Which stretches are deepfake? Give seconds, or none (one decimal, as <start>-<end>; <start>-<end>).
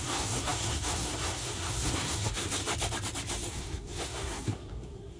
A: 0.0-2.6; 3.5-5.2